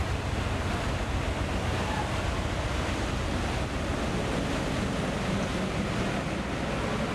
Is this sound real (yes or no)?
yes